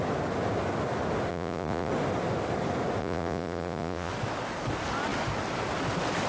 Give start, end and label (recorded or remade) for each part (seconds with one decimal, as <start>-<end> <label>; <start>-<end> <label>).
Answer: 0.0-1.3 recorded; 1.3-1.9 remade; 1.9-3.0 recorded; 3.0-4.1 remade; 4.1-6.3 recorded